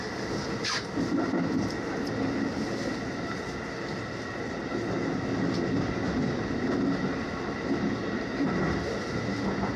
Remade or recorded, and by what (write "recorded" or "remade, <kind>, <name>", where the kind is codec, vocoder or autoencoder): recorded